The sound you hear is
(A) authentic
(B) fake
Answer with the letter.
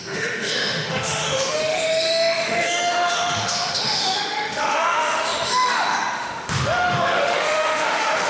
B